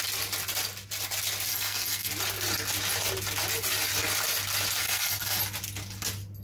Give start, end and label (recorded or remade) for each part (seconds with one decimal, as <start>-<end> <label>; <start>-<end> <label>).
0.0-1.5 recorded; 1.5-2.1 remade; 2.1-4.8 recorded; 4.8-5.4 remade; 5.4-6.4 recorded